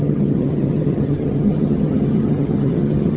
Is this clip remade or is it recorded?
remade